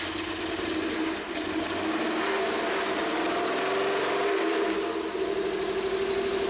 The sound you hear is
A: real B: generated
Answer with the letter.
A